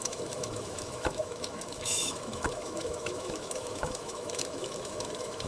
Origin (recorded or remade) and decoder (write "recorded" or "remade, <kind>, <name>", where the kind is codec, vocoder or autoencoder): remade, autoencoder, DAC-VAE